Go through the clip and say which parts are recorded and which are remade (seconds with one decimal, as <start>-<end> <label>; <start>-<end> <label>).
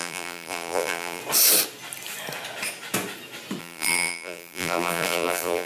0.0-1.2 remade; 1.2-3.6 recorded; 3.6-5.7 remade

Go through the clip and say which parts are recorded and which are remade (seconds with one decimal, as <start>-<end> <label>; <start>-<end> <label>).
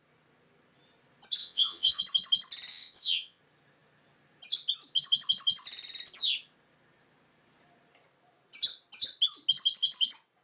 0.0-1.4 recorded; 1.4-2.0 remade; 2.0-2.7 recorded; 2.7-3.4 remade; 3.4-10.4 recorded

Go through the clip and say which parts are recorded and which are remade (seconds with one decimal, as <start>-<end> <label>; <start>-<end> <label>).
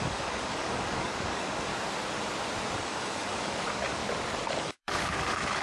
0.0-1.7 remade; 1.7-2.8 recorded; 2.8-4.0 remade; 4.0-4.6 recorded; 4.6-5.6 remade